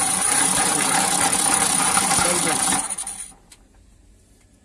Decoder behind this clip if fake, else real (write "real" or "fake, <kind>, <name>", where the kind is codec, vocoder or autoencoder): fake, vocoder, BigVGAN v2